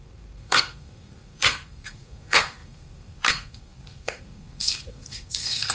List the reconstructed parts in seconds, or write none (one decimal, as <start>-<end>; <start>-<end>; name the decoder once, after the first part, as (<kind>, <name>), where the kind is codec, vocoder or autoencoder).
0.0-5.7 (codec, SNAC)